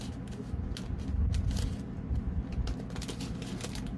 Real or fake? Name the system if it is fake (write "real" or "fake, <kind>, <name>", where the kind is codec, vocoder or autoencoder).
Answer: real